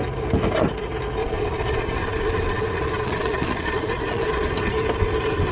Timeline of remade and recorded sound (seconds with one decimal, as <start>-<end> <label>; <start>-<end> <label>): 0.0-1.2 recorded; 1.2-4.5 remade; 4.5-5.5 recorded